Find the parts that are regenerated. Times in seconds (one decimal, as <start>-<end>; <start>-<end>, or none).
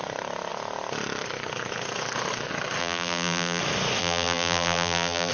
2.8-3.6; 4.0-5.3